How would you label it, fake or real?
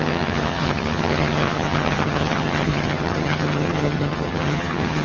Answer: fake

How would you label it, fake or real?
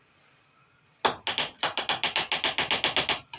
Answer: real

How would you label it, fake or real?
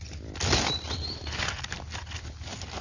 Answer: real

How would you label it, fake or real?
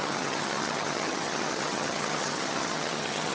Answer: fake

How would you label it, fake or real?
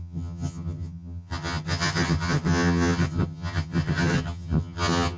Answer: fake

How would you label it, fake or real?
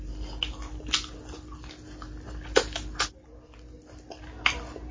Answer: real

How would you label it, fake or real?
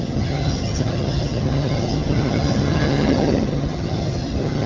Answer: fake